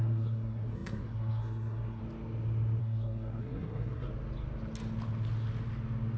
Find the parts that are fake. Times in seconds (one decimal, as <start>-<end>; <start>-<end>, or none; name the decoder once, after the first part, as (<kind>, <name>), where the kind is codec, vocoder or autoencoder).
0.0-2.0 (codec, SNAC); 2.8-4.1

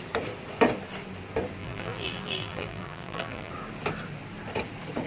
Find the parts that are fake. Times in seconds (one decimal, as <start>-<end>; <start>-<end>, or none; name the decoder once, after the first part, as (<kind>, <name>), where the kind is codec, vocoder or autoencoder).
1.6-3.5 (vocoder, BigVGAN v2)

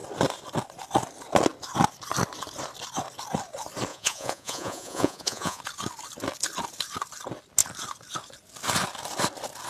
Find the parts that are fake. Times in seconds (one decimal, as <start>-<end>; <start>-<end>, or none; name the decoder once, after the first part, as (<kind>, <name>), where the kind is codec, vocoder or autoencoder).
3.9-5.6 (vocoder, Vocos)

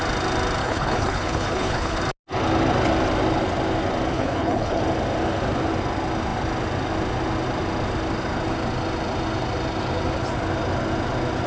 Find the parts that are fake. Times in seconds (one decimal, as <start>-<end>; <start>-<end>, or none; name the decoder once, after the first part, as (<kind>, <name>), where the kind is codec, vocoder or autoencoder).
0.6-2.0 (codec, HILCodec); 4.1-4.8

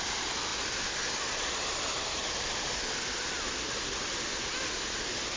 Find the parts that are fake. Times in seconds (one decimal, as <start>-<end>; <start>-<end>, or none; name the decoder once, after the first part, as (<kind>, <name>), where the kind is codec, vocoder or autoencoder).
none